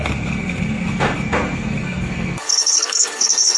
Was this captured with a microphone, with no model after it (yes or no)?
no